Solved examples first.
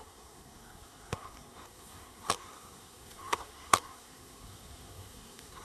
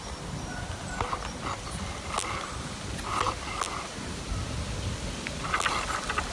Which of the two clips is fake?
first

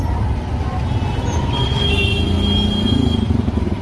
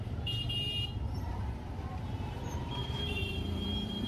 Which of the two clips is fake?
second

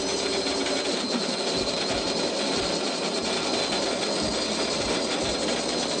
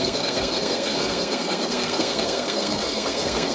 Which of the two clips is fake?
second